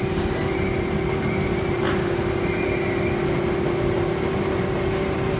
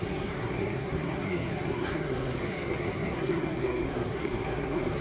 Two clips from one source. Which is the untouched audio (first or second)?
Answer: first